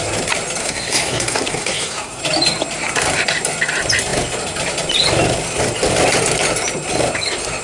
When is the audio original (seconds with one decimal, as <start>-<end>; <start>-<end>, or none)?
0.0-0.6; 2.2-7.6